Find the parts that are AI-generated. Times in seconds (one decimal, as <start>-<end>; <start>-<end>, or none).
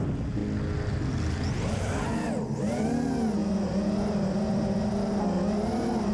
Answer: none